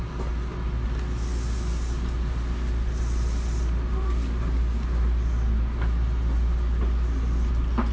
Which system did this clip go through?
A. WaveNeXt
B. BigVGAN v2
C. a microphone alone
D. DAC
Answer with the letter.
C